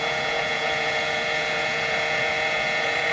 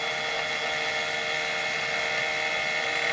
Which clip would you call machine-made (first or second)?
first